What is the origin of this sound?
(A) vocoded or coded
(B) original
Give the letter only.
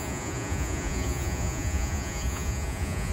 A